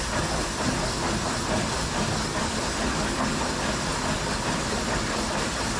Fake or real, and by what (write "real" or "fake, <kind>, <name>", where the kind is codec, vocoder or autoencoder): real